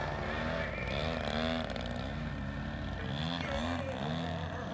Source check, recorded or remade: recorded